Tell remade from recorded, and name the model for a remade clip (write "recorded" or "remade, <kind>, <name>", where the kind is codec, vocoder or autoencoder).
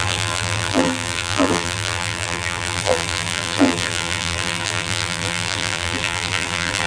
remade, vocoder, BigVGAN v2